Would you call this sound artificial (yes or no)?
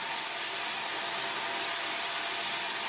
no